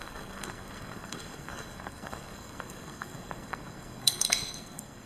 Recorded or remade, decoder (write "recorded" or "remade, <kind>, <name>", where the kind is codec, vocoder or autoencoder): remade, codec, SNAC